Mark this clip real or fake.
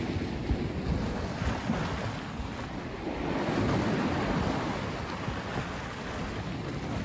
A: real